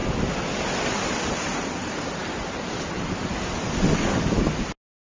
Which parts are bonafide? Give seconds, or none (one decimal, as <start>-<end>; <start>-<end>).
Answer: 0.0-5.0